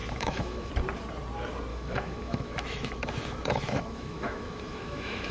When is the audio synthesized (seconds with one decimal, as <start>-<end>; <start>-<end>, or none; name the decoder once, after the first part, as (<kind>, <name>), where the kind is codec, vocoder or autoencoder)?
0.0-0.7 (autoencoder, DAC-VAE); 1.7-5.3